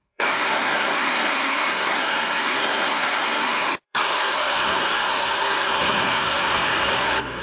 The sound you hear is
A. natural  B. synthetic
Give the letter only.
B